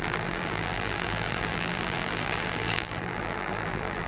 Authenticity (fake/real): fake